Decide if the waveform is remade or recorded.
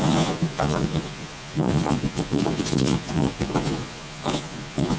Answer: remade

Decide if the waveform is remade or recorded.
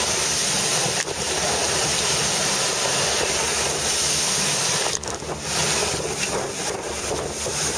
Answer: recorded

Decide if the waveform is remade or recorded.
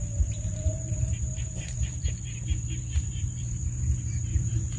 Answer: remade